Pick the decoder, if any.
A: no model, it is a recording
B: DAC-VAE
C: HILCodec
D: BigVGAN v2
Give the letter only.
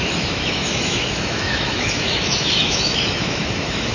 B